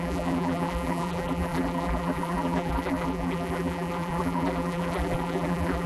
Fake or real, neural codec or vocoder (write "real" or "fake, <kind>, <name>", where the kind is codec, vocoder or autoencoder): fake, vocoder, BigVGAN v2